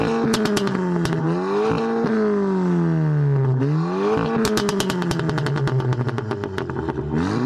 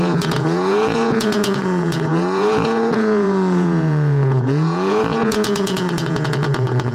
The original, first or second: first